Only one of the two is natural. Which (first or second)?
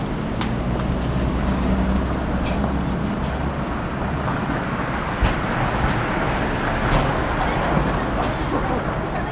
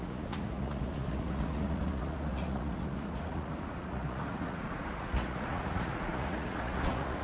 first